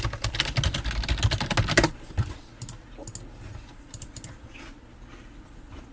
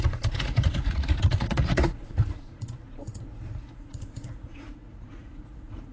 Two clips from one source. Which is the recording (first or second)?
first